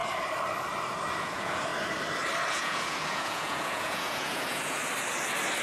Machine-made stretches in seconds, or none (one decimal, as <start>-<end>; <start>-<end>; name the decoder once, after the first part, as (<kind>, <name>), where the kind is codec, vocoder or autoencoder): 1.2-1.7 (vocoder, Vocos); 2.5-4.8